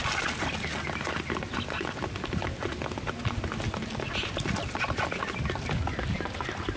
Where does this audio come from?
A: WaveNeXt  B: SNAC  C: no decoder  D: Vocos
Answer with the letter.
C